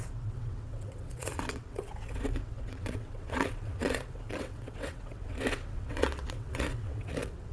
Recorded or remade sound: remade